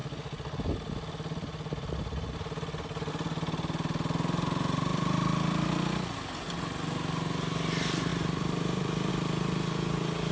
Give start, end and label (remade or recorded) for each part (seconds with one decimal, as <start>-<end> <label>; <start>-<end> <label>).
0.0-4.9 recorded; 4.9-5.7 remade; 5.7-8.1 recorded; 8.1-9.1 remade; 9.1-10.3 recorded